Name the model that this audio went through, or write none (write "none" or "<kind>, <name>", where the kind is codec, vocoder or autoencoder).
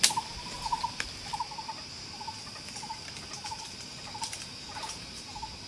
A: none